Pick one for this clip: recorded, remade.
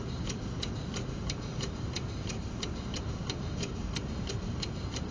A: remade